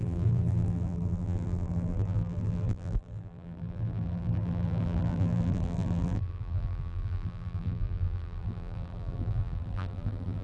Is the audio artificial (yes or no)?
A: yes